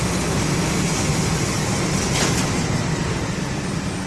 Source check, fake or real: real